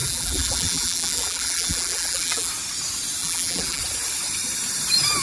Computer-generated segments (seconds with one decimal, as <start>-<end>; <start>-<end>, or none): 0.0-2.5; 3.2-3.8